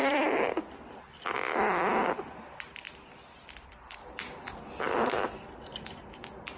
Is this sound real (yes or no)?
no